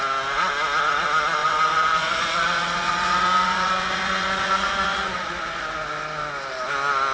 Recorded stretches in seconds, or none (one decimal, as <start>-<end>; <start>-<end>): 0.0-1.4; 5.3-7.1